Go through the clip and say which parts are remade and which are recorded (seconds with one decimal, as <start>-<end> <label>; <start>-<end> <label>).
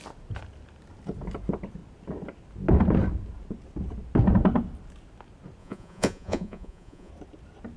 0.0-5.6 recorded; 5.6-7.1 remade; 7.1-7.8 recorded